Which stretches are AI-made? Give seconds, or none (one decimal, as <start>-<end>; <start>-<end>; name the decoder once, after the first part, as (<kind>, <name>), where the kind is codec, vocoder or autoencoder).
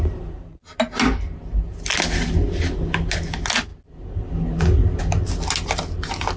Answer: none